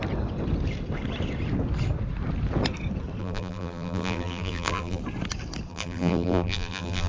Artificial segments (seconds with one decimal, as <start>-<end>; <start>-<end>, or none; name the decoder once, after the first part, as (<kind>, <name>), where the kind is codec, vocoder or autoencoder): 3.2-5.0 (vocoder, BigVGAN v2); 5.7-7.1